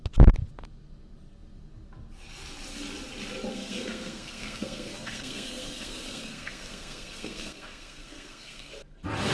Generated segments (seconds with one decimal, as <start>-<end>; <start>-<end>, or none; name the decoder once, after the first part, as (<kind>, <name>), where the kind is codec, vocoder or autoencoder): 3.5-8.7 (codec, SNAC)